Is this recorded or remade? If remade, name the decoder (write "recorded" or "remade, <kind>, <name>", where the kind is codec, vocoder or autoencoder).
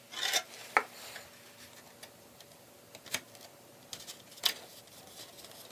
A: recorded